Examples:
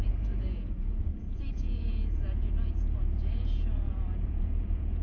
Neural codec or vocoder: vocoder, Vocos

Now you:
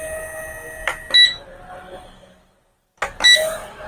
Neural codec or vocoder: none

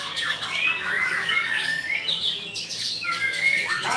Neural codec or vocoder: codec, DAC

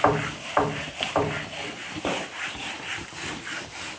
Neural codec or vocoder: none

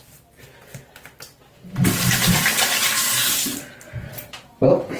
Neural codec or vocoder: none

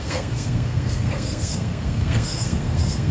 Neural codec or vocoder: codec, SNAC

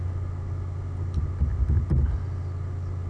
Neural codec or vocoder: none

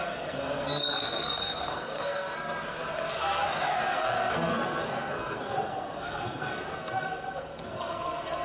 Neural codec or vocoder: codec, SNAC